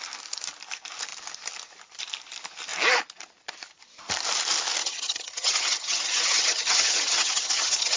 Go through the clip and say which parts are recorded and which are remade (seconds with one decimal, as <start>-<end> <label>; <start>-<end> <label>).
0.0-4.8 recorded; 4.8-8.0 remade